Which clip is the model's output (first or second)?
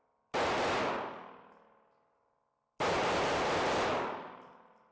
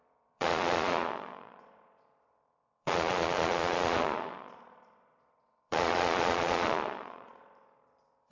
second